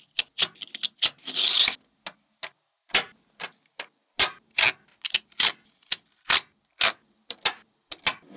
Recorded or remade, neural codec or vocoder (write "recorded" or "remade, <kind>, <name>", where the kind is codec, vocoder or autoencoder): recorded